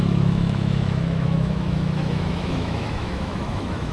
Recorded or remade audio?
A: remade